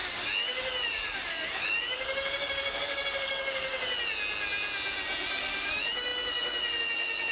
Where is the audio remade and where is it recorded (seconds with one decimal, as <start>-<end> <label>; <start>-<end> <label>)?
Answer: 0.0-3.7 remade; 3.7-5.3 recorded; 5.3-7.3 remade